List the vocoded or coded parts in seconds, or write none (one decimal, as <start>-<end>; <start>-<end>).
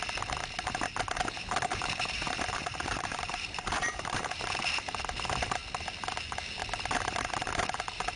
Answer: 1.7-5.0